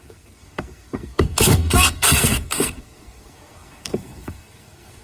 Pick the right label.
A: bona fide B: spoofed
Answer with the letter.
B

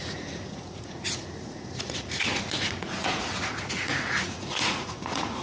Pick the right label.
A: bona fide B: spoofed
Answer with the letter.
B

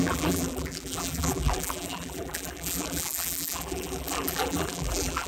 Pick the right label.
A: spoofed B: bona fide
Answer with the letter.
A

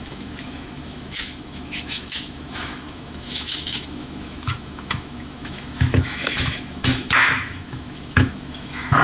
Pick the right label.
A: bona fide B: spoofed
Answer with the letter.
B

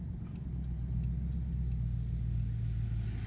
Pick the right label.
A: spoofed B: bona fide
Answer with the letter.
B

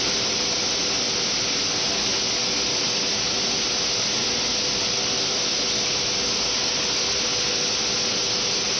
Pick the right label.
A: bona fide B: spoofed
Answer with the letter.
A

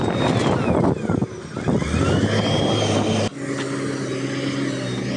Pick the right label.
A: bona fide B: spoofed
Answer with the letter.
A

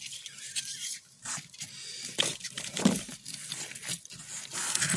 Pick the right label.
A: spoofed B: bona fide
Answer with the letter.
B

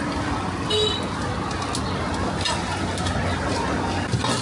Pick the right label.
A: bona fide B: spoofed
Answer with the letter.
A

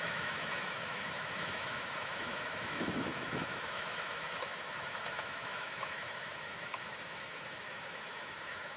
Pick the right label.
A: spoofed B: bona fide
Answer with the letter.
A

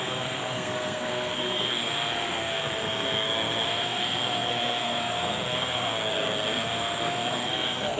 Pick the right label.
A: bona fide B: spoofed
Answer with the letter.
B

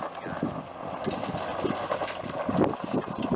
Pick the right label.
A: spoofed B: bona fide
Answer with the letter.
B